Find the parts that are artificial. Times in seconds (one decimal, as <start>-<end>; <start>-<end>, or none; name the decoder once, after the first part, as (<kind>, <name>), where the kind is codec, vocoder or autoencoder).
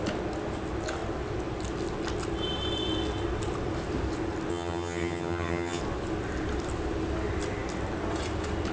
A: 4.5-5.8 (vocoder, HiFi-GAN)